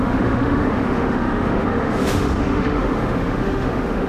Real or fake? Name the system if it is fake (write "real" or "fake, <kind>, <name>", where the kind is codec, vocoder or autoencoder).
fake, autoencoder, DAC-VAE